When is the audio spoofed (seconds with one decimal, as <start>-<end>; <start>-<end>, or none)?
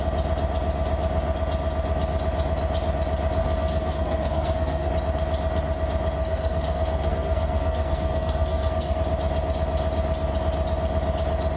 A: 3.4-4.9; 6.2-9.0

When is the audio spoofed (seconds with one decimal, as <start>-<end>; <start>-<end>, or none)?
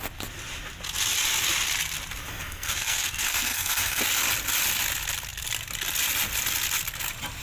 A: 2.3-4.0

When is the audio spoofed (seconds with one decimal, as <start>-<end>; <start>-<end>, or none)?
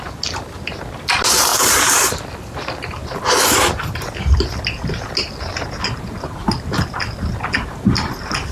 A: 1.5-3.2